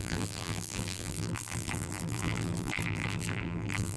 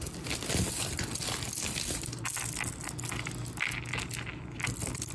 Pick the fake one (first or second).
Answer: first